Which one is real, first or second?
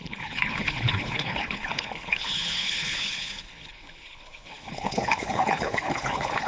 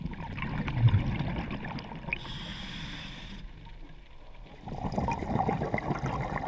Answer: second